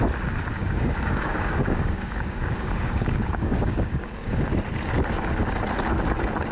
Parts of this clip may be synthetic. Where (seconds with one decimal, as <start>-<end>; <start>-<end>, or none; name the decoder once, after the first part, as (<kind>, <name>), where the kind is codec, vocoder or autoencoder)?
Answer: 0.6-4.4 (codec, DAC)